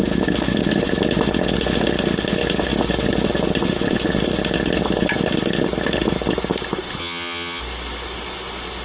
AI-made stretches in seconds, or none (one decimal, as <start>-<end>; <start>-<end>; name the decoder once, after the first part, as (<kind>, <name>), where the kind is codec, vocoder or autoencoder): 7.0-7.6 (vocoder, HiFi-GAN)

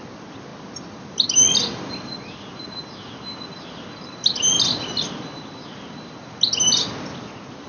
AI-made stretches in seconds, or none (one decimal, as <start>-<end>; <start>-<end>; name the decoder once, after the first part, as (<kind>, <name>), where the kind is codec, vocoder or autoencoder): none

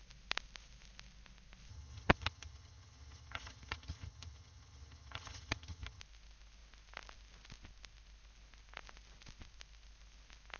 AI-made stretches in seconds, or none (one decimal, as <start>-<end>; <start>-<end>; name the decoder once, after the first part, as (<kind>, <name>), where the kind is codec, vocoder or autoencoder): 1.7-6.0 (vocoder, HiFi-GAN)